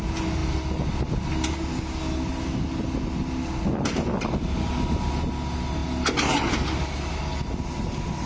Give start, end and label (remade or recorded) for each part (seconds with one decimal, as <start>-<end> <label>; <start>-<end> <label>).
0.0-8.3 recorded